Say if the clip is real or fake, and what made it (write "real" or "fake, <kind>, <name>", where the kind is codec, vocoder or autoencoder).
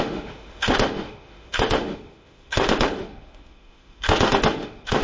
fake, autoencoder, DAC-VAE